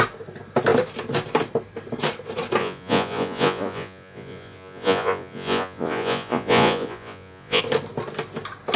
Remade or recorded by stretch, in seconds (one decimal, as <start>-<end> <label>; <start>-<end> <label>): 0.0-2.6 recorded; 2.6-7.6 remade; 7.6-8.8 recorded